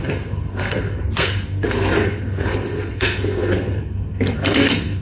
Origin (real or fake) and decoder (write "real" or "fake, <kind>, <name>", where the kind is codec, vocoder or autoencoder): fake, codec, SNAC